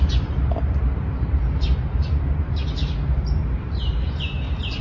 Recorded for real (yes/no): no